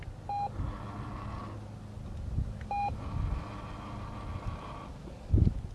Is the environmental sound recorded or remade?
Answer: recorded